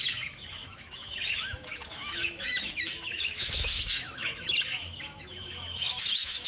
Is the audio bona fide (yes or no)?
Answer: no